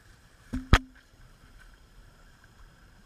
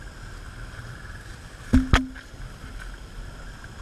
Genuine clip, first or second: second